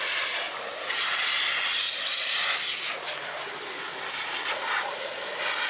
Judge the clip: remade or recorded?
recorded